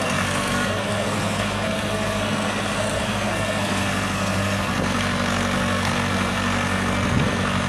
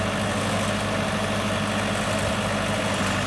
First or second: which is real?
second